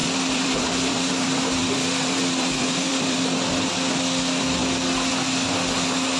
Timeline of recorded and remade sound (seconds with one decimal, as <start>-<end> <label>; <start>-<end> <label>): 0.0-3.7 remade; 3.7-6.2 recorded